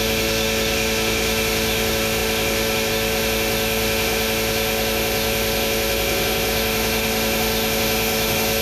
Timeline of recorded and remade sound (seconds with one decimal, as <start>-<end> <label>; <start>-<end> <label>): 0.0-8.6 remade